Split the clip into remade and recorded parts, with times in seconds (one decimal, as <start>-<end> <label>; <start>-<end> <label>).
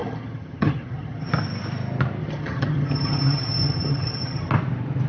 0.0-1.3 remade; 1.3-2.2 recorded; 2.2-4.5 remade; 4.5-5.1 recorded